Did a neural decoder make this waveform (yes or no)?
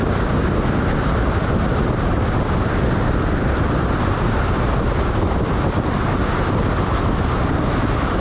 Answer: no